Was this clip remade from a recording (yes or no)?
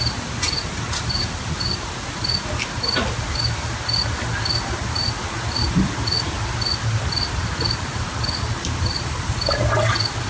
no